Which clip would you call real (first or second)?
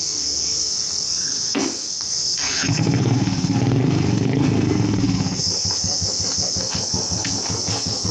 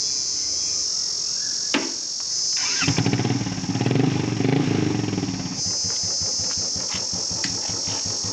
second